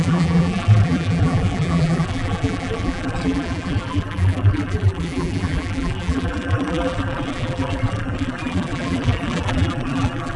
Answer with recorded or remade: remade